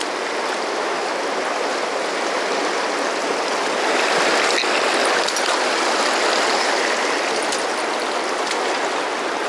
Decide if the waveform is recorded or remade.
recorded